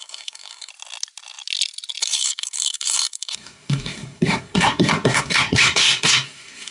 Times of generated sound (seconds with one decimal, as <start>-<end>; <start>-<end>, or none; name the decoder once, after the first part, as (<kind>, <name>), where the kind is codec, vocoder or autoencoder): 0.0-0.7 (codec, SNAC); 2.0-6.7